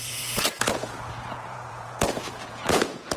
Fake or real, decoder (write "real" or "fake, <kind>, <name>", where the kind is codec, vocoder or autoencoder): fake, vocoder, Vocos